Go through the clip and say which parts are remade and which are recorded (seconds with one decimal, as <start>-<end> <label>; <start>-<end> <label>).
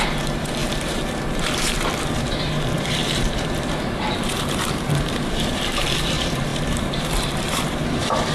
0.0-8.3 remade